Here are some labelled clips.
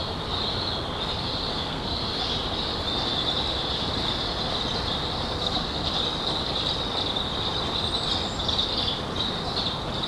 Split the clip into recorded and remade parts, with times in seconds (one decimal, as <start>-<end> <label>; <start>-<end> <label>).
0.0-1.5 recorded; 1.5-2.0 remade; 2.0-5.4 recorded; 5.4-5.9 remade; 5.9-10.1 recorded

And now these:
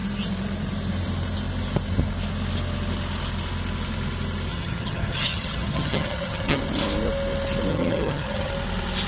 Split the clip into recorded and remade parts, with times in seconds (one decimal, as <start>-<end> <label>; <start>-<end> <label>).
0.0-4.5 recorded; 4.5-6.6 remade; 6.6-7.7 recorded; 7.7-8.5 remade; 8.5-9.1 recorded

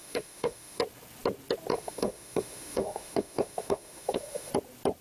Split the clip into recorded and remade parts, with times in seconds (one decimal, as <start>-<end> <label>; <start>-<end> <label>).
0.0-0.8 remade; 0.8-1.7 recorded; 1.7-4.5 remade; 4.5-5.0 recorded

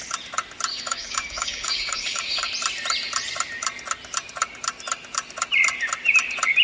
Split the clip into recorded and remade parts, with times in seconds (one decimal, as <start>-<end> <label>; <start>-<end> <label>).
0.0-0.7 recorded; 0.7-2.5 remade; 2.5-6.6 recorded